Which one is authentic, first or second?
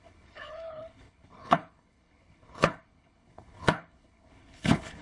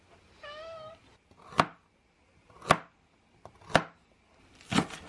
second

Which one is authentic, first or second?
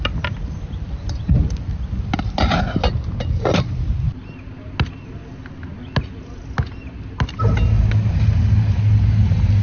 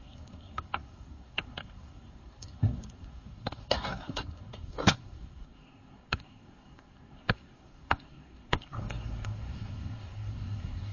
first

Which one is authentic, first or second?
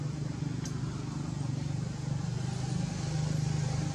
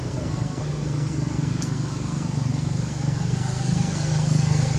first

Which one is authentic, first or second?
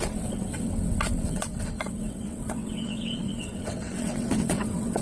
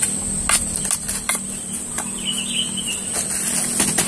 second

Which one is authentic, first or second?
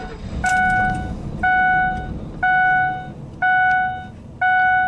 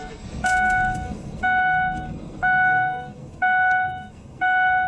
first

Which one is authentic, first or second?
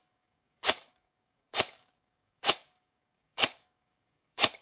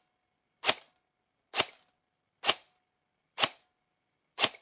second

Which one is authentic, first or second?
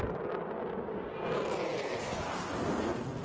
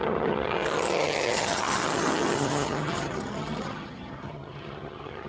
first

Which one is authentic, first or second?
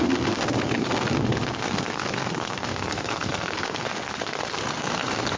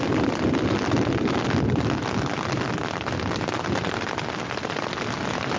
second